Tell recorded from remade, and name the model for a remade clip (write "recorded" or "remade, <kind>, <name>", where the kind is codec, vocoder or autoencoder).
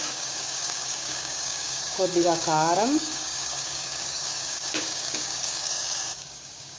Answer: remade, codec, DAC